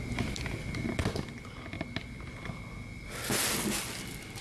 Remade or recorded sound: recorded